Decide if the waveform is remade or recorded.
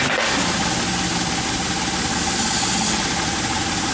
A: recorded